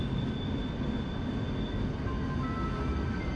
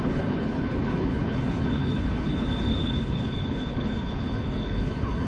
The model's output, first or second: second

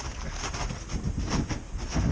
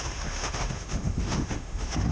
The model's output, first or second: second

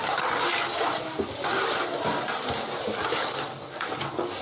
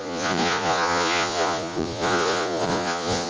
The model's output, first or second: second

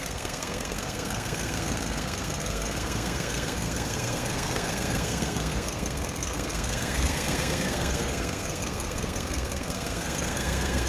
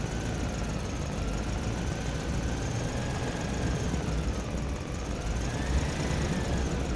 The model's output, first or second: first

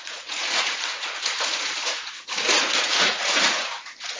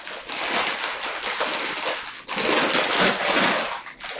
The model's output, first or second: first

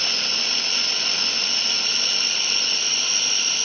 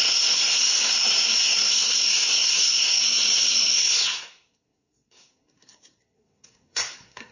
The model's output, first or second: second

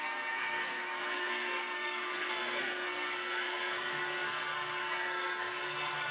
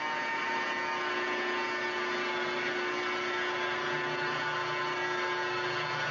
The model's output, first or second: first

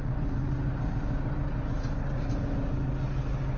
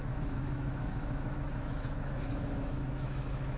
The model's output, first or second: second